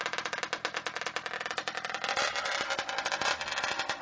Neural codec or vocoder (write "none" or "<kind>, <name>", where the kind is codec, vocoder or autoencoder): none